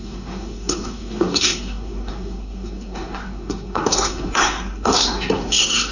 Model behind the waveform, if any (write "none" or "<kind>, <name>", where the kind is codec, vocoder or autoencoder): codec, SNAC